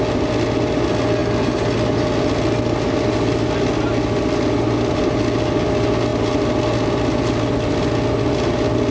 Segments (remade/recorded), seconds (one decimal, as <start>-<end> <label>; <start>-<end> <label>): 0.0-8.9 recorded